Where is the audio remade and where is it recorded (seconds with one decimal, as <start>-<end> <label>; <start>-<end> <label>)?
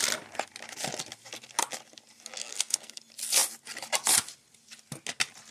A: 0.0-2.4 recorded; 2.4-3.0 remade; 3.0-5.5 recorded